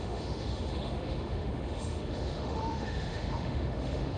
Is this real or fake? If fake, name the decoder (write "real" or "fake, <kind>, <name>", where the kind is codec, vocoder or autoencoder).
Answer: fake, autoencoder, DAC-VAE